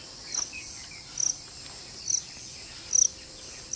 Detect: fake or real real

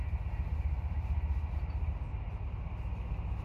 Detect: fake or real real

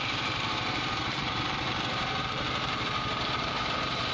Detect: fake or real fake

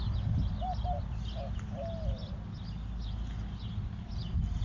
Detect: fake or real real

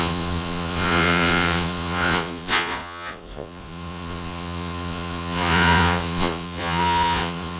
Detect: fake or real fake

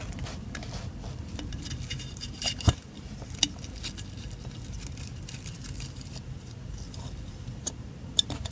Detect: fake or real fake